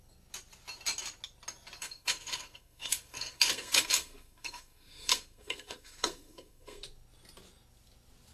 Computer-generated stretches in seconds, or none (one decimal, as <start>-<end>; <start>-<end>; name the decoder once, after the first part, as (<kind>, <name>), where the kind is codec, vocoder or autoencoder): 1.8-6.8 (codec, SNAC)